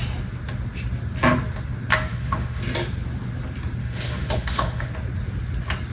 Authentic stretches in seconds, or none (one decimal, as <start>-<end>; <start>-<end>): 0.0-2.1; 2.6-3.8; 4.9-5.9